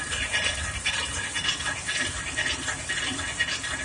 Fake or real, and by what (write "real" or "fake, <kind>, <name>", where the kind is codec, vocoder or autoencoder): real